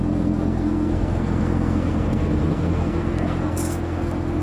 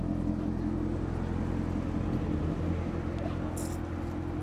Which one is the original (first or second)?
second